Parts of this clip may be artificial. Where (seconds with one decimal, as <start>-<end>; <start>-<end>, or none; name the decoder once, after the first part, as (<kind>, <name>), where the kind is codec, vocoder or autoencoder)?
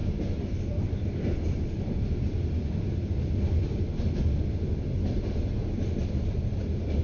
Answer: none